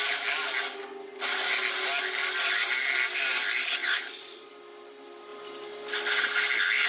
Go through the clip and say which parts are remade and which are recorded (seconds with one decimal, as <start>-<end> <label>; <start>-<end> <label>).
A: 0.0-3.8 recorded; 3.8-4.5 remade; 4.5-6.9 recorded